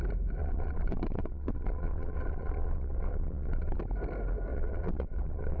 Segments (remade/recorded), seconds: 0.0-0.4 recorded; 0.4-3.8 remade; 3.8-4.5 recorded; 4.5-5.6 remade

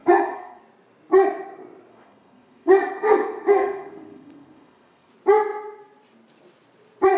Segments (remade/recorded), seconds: 0.0-0.6 remade; 0.6-1.9 recorded; 1.9-5.1 remade; 5.1-7.2 recorded

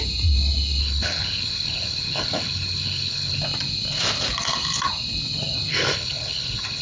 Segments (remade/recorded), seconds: 0.0-0.8 recorded; 0.8-3.4 remade; 3.4-5.7 recorded; 5.7-6.8 remade

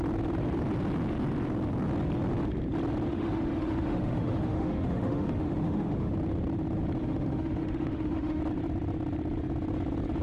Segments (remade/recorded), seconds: 0.0-3.1 recorded; 3.1-6.1 remade; 6.1-7.0 recorded; 7.0-8.4 remade; 8.4-10.2 recorded

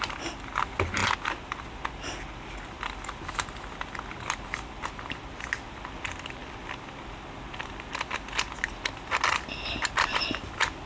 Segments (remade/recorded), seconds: 0.0-10.9 recorded

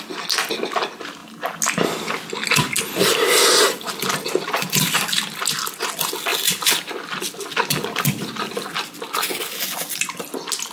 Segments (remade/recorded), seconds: 0.0-10.7 recorded

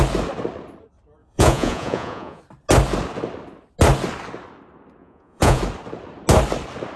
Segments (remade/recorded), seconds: 0.0-1.2 recorded; 1.2-2.4 remade; 2.4-5.0 recorded; 5.0-5.6 remade; 5.6-7.0 recorded